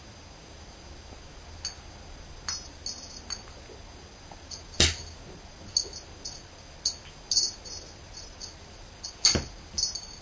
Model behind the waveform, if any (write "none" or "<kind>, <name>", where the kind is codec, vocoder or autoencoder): none